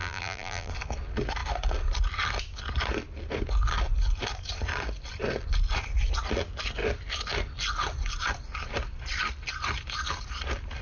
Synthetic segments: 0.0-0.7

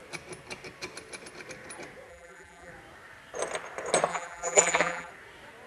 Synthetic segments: 2.1-2.7; 4.1-5.1

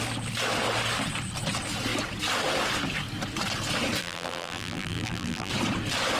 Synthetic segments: 4.0-5.5

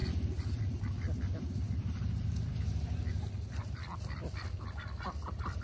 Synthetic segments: 0.0-3.1; 3.6-5.6